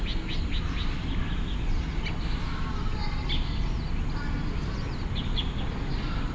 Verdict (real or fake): real